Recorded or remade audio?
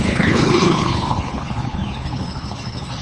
remade